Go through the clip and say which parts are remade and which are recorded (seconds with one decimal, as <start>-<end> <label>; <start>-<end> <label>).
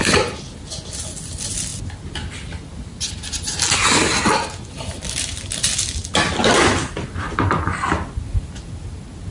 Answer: 0.0-9.3 recorded